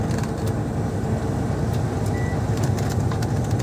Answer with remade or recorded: recorded